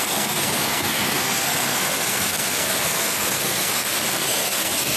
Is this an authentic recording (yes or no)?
no